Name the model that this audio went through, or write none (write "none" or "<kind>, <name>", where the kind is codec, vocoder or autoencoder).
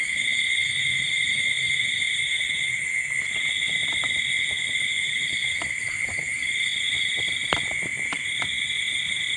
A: none